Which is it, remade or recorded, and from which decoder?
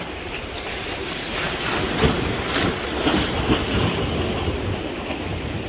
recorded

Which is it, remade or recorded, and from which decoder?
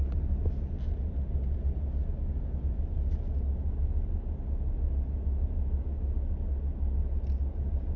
recorded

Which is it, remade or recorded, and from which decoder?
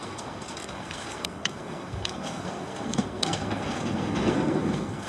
remade, codec, SNAC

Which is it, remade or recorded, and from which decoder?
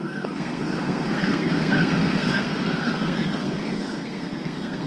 remade, codec, SNAC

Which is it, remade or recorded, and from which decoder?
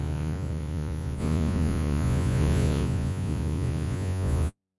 remade, vocoder, Vocos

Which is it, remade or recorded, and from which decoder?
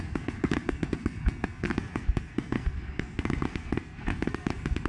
remade, codec, SNAC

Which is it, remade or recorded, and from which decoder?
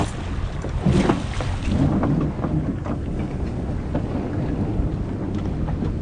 recorded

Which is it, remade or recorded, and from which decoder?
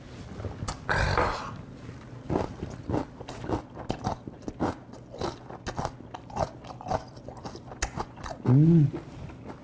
recorded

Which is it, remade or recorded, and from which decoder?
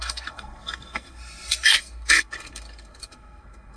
remade, codec, SNAC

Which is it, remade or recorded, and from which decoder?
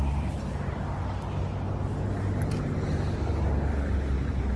recorded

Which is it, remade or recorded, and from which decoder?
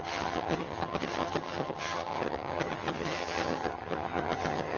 remade, vocoder, HiFi-GAN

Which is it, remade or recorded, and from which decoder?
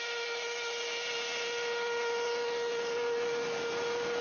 recorded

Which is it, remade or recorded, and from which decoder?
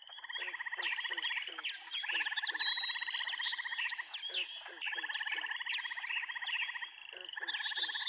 recorded